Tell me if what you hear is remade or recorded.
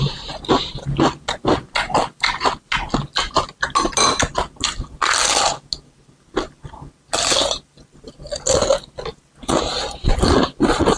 recorded